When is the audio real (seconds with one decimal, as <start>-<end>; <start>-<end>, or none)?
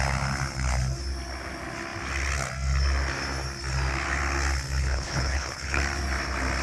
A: 0.0-4.8; 5.8-6.6